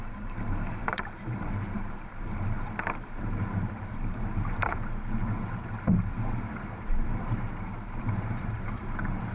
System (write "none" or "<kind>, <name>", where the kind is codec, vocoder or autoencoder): vocoder, BigVGAN v2